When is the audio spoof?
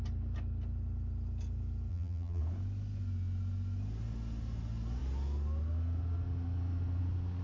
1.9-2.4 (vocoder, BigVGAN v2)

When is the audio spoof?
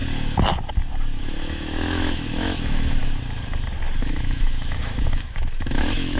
1.2-3.0 (autoencoder, DAC-VAE); 4.0-6.2